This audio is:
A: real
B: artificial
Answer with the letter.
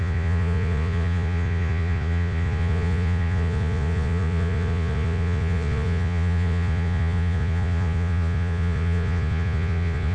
B